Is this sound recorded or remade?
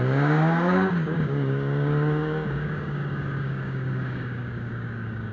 remade